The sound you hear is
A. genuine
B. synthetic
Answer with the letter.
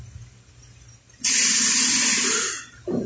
A